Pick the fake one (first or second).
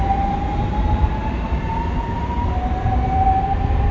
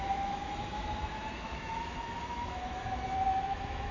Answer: second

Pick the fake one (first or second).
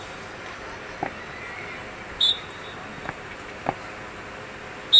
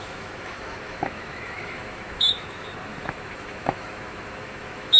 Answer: second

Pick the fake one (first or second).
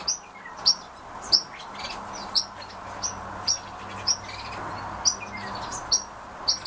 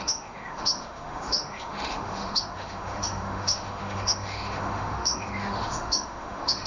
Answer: second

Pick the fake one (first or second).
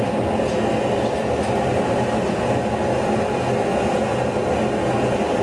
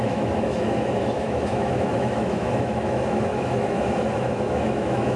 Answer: second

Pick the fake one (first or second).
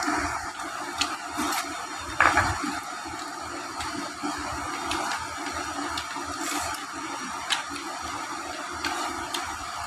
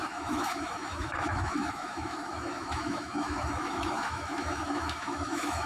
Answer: second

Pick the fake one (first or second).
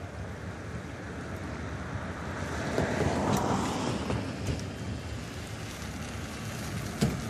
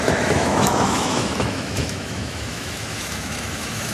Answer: second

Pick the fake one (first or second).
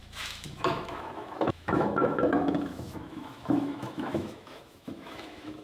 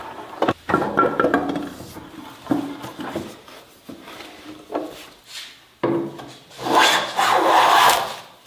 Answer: first